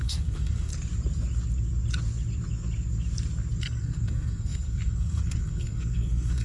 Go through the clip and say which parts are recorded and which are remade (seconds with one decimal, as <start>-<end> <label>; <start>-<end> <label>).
0.0-0.7 remade; 0.7-3.6 recorded; 3.6-6.4 remade